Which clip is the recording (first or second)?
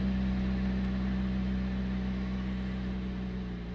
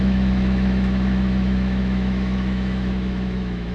first